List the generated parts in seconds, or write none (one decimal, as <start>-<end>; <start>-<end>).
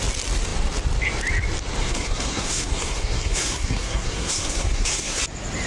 1.8-5.2